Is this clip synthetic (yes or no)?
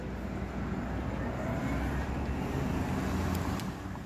no